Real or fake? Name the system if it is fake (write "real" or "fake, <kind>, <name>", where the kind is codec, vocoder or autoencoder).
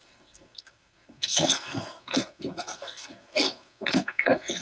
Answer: fake, codec, SNAC